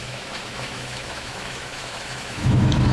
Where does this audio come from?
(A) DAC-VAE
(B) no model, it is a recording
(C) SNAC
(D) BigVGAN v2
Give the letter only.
A